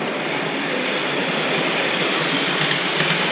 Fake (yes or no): no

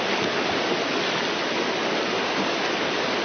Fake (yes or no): no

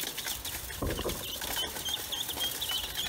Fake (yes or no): no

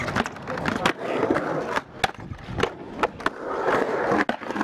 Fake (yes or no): no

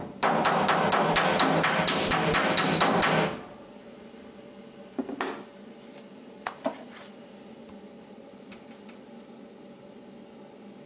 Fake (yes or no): no